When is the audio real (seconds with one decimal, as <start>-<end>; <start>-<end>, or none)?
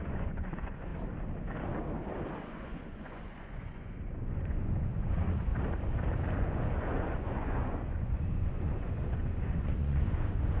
0.9-2.4; 5.5-6.3